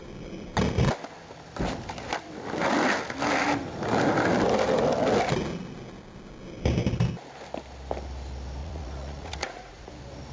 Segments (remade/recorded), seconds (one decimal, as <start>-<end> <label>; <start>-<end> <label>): 0.0-8.6 recorded; 8.6-9.9 remade; 9.9-10.3 recorded